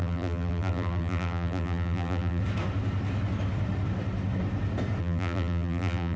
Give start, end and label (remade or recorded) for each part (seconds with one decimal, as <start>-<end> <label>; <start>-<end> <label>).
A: 0.0-2.4 remade; 2.4-5.0 recorded; 5.0-6.2 remade